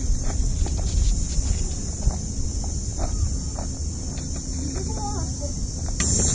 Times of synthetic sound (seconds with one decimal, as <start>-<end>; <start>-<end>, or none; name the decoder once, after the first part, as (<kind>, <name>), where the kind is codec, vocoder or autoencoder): none